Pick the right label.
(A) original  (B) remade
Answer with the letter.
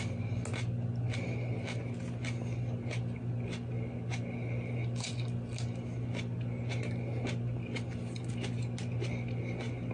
A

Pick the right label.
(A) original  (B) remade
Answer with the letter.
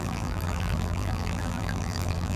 B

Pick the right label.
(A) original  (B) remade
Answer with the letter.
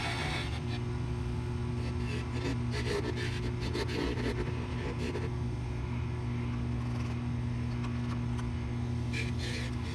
A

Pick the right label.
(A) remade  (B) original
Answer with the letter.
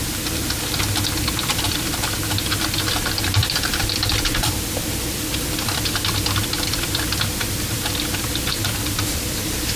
A